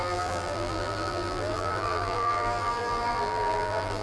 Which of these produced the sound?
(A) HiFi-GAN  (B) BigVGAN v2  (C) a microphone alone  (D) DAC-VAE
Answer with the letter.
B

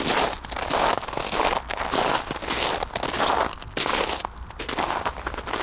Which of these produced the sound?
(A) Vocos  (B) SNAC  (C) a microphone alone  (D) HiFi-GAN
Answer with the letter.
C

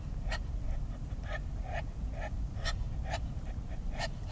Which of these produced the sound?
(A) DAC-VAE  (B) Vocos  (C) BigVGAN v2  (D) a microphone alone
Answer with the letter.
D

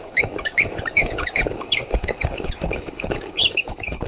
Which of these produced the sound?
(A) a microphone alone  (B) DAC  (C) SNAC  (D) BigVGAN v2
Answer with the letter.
B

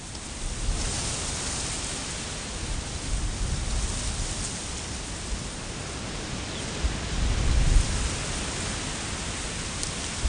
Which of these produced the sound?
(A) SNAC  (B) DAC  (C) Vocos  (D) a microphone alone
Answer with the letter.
D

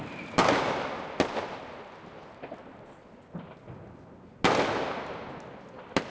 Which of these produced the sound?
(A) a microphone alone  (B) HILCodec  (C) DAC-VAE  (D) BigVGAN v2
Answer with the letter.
A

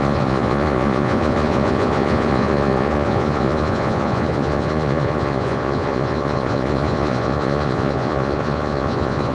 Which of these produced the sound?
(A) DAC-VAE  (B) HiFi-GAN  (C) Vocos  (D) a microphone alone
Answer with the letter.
C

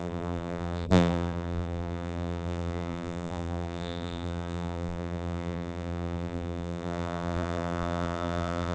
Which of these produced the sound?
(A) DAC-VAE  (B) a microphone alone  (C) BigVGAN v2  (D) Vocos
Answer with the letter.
C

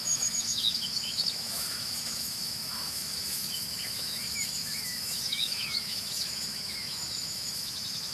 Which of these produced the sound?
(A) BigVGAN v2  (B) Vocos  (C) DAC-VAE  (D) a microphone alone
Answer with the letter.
C